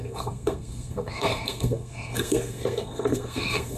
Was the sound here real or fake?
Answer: fake